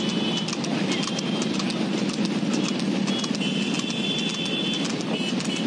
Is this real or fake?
real